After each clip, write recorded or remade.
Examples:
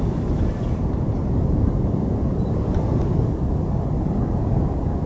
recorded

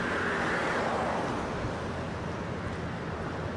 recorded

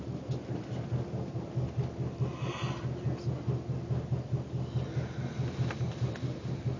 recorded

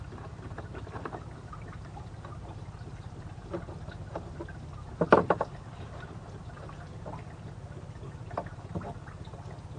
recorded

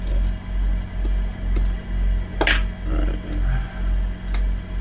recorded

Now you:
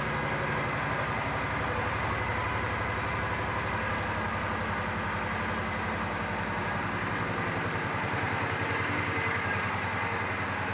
recorded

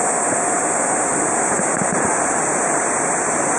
remade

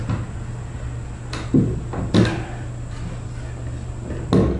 recorded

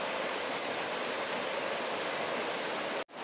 recorded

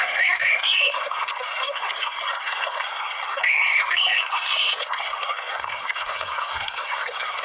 remade